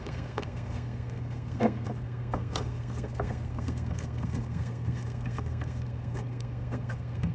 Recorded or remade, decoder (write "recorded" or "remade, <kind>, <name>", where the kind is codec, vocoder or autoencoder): remade, codec, SNAC